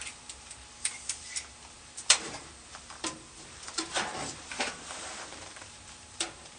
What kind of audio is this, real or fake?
fake